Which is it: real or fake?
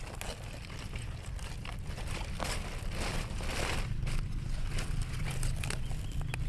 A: real